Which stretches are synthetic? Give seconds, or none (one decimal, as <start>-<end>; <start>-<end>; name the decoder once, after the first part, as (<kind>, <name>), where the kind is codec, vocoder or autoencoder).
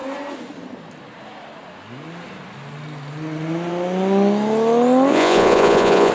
5.1-6.1 (vocoder, Vocos)